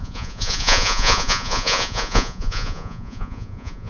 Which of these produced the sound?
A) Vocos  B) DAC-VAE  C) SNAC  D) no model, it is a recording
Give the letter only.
A